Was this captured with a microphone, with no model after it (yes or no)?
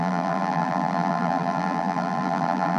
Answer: no